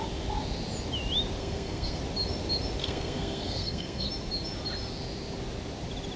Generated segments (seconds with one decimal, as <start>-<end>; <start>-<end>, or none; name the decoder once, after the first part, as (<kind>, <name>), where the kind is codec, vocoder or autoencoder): 1.4-2.0 (codec, SNAC); 2.8-4.1